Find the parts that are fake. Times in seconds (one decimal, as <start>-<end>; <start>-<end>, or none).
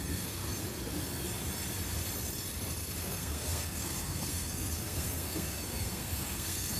0.0-0.4; 3.0-6.8